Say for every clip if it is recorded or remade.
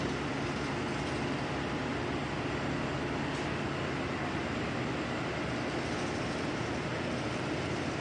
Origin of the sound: recorded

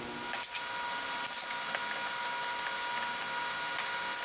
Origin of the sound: recorded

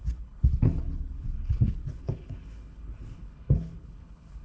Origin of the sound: remade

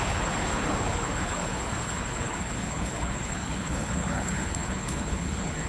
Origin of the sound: remade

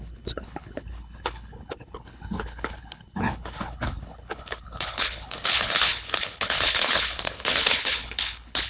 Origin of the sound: remade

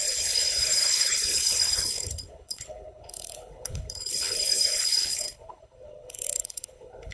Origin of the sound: remade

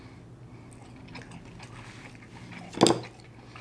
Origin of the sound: recorded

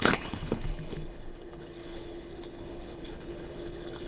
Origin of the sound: remade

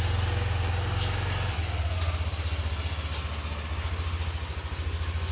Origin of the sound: recorded